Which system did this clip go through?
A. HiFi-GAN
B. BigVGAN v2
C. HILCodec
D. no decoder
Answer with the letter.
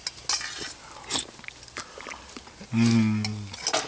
D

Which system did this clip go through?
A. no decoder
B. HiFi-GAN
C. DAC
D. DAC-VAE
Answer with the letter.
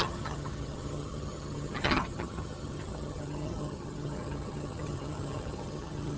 B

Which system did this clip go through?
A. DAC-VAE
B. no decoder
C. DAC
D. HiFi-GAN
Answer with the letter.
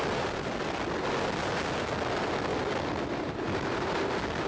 B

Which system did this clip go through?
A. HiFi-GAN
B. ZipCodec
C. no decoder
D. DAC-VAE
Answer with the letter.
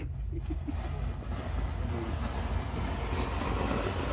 C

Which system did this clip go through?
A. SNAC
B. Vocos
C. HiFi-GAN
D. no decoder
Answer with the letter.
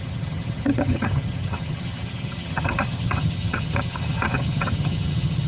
C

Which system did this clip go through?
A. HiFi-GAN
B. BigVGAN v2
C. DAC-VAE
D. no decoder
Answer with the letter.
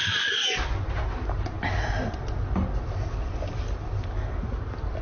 D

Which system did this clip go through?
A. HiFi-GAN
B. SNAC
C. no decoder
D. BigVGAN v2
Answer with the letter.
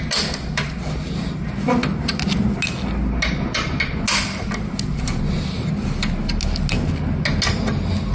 C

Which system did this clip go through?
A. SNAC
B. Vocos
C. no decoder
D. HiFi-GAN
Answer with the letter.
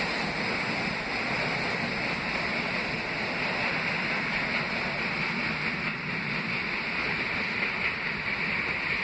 C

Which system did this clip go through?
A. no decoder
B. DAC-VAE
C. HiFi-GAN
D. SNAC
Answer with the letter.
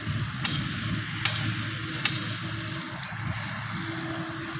A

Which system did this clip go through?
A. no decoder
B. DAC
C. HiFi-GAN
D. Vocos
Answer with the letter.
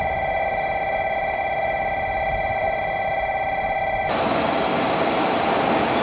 A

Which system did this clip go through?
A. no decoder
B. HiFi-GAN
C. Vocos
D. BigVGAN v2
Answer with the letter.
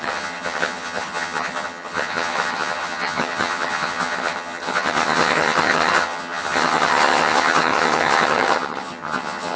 B